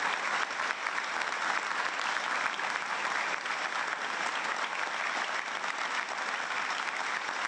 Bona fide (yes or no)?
yes